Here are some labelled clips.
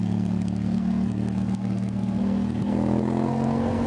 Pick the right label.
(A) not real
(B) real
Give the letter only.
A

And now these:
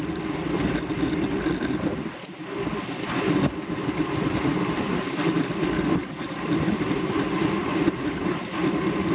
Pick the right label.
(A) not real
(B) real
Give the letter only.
B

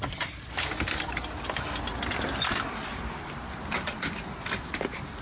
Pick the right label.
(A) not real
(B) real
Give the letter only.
B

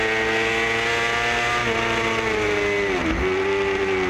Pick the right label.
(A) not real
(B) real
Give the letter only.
B